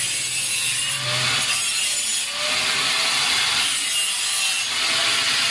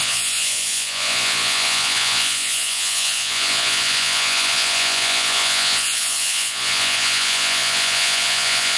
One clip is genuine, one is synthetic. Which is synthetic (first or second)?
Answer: second